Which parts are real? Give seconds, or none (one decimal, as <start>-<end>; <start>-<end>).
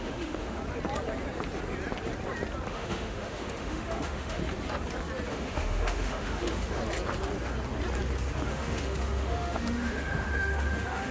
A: 0.6-2.7; 4.4-5.3; 6.8-8.5